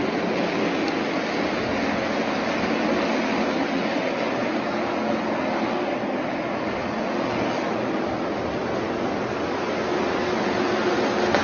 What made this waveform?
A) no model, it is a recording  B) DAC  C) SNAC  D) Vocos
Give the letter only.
A